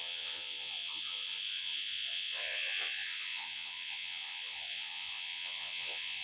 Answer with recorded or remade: remade